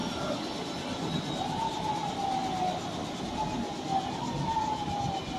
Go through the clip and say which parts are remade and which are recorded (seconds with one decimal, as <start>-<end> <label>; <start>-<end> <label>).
0.0-5.4 recorded